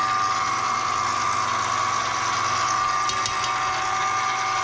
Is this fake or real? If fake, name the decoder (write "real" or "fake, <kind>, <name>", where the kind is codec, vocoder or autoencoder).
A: real